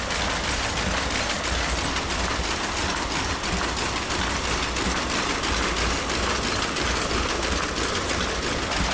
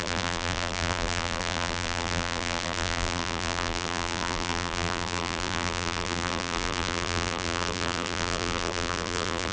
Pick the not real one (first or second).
second